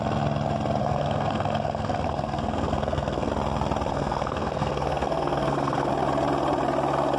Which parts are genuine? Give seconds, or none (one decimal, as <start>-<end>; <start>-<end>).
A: 0.0-0.8; 3.3-3.9; 5.9-7.2